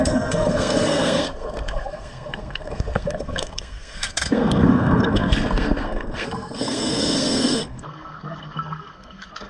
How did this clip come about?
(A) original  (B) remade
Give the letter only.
B